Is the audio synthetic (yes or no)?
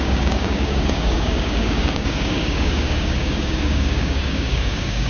yes